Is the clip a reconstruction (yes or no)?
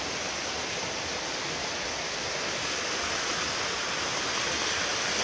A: no